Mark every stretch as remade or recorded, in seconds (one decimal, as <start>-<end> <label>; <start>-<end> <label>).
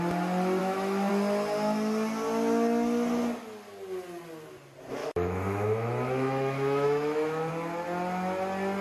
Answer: 0.0-0.6 recorded; 0.6-1.1 remade; 1.1-5.0 recorded; 5.0-7.5 remade; 7.5-8.8 recorded